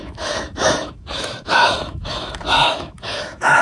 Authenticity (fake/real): fake